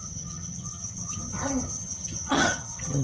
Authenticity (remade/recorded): remade